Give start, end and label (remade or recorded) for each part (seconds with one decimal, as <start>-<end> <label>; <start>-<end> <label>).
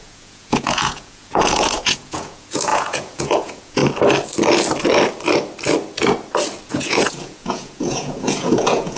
0.0-3.8 remade; 3.8-6.6 recorded; 6.6-9.0 remade